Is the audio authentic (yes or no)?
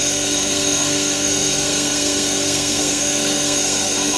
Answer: no